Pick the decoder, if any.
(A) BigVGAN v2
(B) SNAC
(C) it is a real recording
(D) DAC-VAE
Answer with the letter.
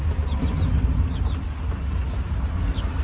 C